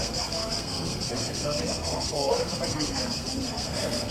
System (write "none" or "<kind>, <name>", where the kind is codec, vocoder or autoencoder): codec, SNAC